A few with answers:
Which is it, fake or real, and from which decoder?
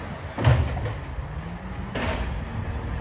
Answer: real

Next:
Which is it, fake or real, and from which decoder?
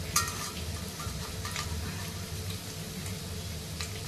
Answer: real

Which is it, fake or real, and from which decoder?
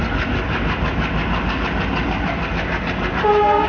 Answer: real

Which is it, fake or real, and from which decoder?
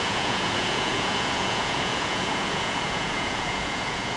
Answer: fake, vocoder, Vocos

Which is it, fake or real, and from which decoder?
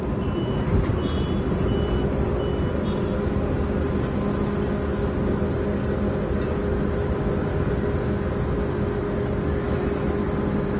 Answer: real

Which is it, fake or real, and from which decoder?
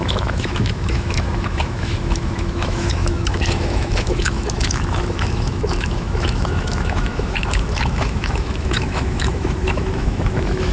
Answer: fake, autoencoder, DAC-VAE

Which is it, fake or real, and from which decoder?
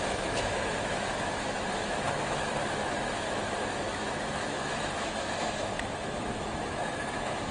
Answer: fake, autoencoder, DAC-VAE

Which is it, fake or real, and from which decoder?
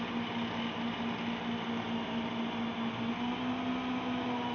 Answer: real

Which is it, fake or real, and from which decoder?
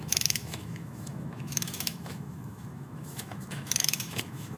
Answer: fake, autoencoder, DAC-VAE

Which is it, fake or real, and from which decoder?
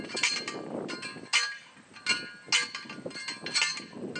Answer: real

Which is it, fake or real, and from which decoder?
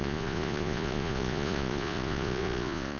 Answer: fake, vocoder, Vocos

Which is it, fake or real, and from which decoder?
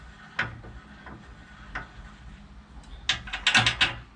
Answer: real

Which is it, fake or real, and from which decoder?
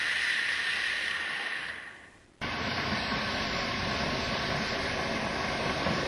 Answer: real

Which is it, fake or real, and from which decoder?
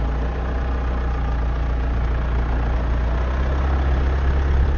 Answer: real